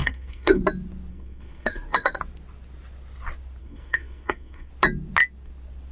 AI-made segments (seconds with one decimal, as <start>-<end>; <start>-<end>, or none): 0.0-0.6; 1.1-2.2; 3.6-4.7